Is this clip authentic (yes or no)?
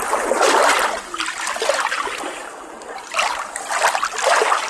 yes